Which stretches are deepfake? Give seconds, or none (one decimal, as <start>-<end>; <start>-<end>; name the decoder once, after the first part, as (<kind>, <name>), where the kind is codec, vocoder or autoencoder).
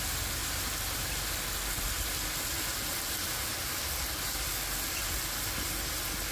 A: none